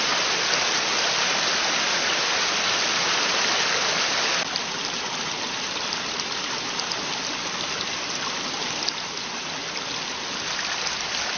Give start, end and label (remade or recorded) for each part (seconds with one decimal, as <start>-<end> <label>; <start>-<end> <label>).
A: 0.0-11.4 recorded